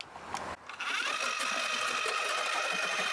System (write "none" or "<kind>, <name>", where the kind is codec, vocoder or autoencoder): none